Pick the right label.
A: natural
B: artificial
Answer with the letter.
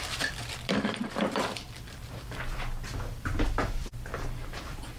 B